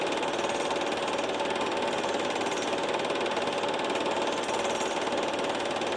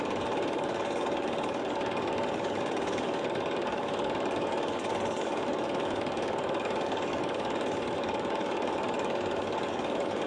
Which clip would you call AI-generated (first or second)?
second